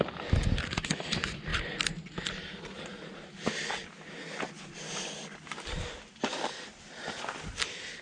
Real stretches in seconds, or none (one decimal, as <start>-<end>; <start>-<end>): 0.0-8.0